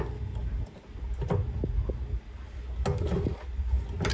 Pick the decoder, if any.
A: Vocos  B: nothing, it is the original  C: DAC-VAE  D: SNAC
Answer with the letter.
B